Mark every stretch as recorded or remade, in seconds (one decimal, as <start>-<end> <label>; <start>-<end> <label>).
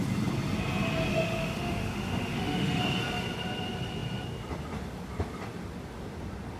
0.0-1.1 recorded; 1.1-2.8 remade; 2.8-6.6 recorded